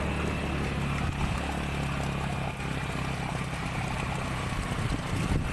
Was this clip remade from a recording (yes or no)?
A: no